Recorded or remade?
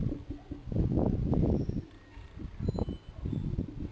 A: recorded